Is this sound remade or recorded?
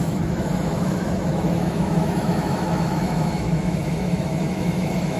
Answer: remade